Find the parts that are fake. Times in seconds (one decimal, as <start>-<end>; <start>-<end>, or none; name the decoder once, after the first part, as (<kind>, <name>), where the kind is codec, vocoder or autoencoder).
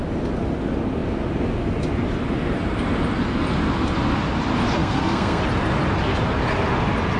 4.8-5.4 (codec, SNAC)